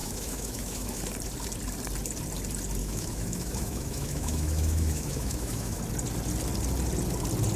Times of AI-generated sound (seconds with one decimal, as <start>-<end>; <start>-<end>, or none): 0.0-1.0; 2.8-5.8